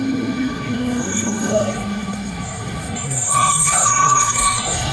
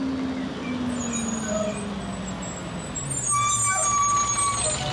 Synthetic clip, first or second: first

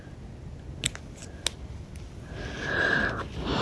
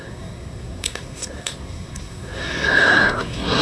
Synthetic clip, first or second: second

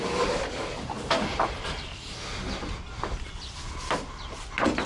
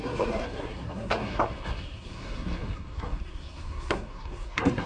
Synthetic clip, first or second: second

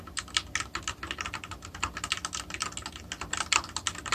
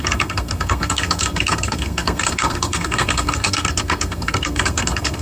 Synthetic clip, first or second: second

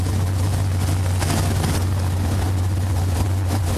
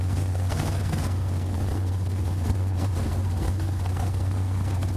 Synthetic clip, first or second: second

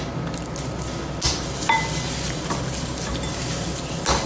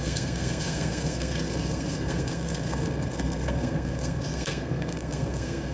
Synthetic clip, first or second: second